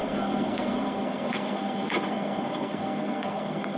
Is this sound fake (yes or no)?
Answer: yes